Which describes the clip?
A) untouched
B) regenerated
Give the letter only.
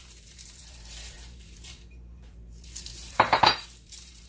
B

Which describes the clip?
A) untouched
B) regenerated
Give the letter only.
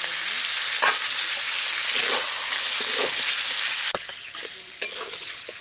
A